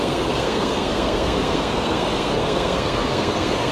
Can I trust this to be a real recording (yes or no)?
no